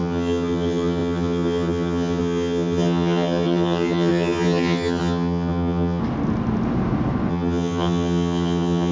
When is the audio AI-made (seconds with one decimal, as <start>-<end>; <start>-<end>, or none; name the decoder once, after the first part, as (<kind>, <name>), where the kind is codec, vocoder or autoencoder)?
0.0-6.0 (vocoder, HiFi-GAN); 7.3-8.9